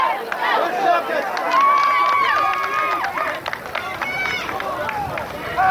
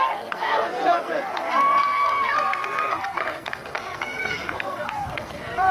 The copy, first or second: second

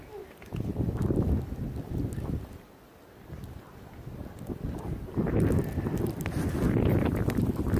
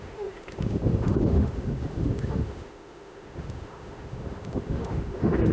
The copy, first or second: second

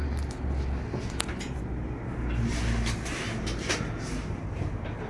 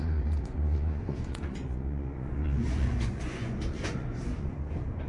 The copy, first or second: second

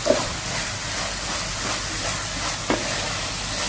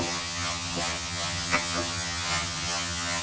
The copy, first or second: second